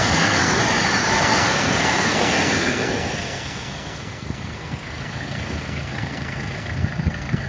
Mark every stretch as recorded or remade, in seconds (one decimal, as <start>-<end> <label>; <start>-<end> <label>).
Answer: 0.0-0.6 remade; 0.6-1.2 recorded; 1.2-7.5 remade